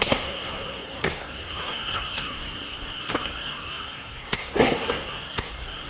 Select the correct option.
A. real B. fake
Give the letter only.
B